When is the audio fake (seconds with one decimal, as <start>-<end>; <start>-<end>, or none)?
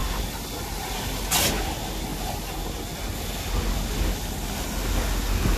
none